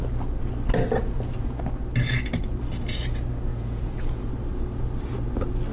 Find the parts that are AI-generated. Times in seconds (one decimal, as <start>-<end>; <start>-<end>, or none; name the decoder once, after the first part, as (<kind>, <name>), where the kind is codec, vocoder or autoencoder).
1.0-1.6 (vocoder, Vocos); 3.5-4.3